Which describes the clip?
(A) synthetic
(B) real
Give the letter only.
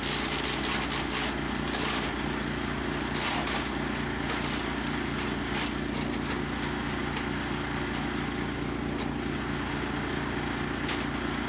B